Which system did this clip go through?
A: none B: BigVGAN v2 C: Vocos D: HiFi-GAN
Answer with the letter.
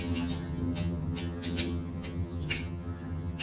D